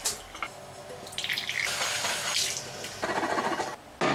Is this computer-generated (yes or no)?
no